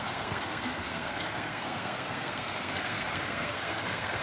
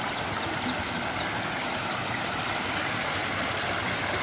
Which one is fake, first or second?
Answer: first